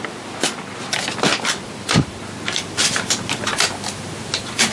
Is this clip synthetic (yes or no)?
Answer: no